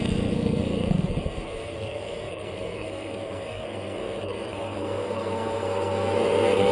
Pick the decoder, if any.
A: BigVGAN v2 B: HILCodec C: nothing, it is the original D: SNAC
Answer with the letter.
D